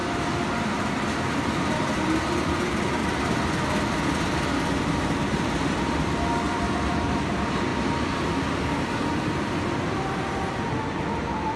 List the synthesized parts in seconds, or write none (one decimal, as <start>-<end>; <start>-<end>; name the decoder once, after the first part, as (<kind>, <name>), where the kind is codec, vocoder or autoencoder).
1.3-3.0 (vocoder, BigVGAN v2); 6.5-7.7; 11.0-11.6